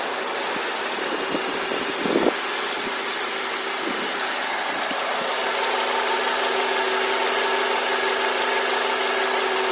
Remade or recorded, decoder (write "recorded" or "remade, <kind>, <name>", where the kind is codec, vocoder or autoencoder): recorded